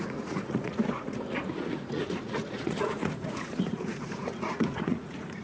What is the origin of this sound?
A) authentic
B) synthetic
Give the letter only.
B